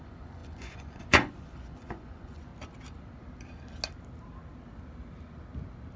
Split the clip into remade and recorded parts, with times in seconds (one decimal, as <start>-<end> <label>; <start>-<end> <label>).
0.0-2.5 remade; 2.5-6.0 recorded